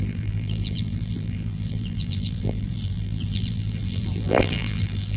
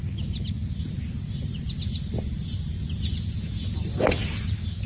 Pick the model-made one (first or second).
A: first